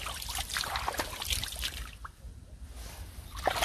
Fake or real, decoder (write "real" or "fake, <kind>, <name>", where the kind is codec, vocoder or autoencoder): real